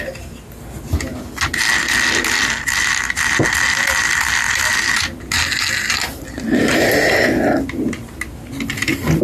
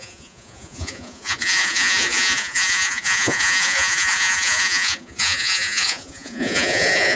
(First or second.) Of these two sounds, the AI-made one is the second